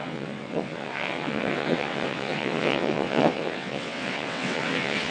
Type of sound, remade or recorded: remade